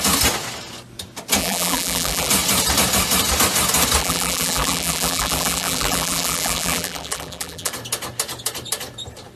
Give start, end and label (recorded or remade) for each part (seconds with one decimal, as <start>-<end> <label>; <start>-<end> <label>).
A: 0.0-1.4 recorded; 1.4-2.3 remade; 2.3-4.0 recorded; 4.0-7.7 remade; 7.7-9.4 recorded